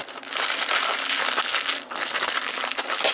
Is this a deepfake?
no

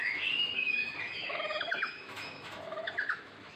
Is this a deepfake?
yes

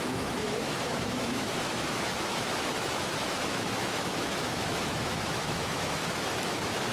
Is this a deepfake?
yes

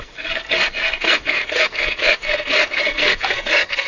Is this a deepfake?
yes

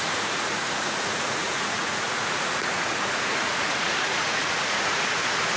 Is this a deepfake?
yes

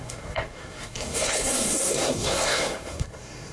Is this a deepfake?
yes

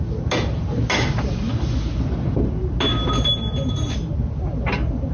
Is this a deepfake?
no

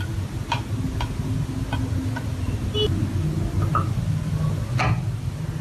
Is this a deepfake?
no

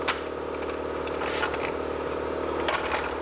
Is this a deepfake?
no